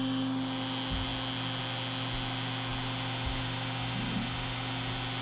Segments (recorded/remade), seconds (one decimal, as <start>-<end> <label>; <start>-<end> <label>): 0.0-5.2 recorded